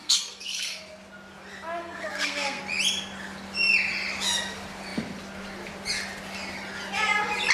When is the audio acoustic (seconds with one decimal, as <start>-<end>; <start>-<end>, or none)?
0.8-1.8; 2.6-7.5